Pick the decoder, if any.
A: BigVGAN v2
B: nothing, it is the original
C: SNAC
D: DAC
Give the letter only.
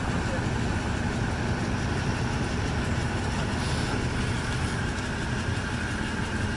B